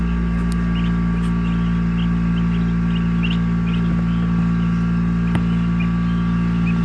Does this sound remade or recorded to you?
recorded